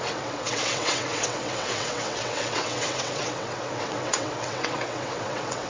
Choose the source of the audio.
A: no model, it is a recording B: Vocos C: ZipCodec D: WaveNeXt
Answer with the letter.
D